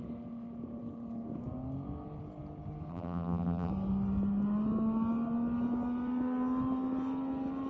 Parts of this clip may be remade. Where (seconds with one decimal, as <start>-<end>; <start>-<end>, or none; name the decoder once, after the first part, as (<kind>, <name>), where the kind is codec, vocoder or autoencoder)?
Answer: 2.9-3.7 (vocoder, BigVGAN v2)